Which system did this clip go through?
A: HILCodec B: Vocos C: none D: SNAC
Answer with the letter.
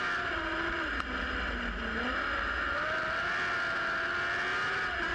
C